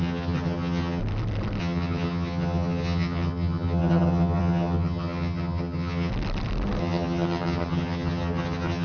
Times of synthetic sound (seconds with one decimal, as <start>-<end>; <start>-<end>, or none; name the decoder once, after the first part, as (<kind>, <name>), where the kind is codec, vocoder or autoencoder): 0.0-1.0 (vocoder, HiFi-GAN); 1.6-6.1; 6.8-8.8